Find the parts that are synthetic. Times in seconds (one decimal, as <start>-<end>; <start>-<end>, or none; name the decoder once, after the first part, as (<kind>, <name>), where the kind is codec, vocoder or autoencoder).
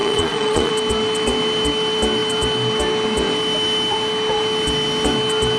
0.0-0.7 (vocoder, Vocos)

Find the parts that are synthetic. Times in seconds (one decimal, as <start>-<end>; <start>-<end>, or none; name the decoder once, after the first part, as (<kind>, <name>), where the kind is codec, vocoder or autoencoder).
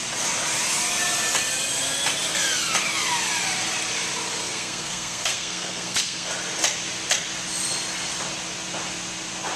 4.4-6.3 (codec, SNAC)